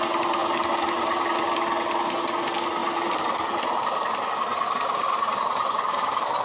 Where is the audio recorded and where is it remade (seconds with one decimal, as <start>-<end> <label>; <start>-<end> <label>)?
0.0-0.4 recorded; 0.4-1.4 remade; 1.4-2.8 recorded; 2.8-4.1 remade; 4.1-4.5 recorded; 4.5-5.4 remade; 5.4-6.4 recorded